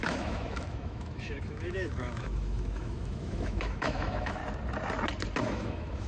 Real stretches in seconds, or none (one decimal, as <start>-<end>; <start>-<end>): 4.4-5.4